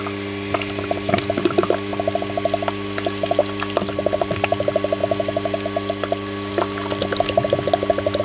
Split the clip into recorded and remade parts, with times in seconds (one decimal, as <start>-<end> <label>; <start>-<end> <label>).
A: 0.0-8.2 recorded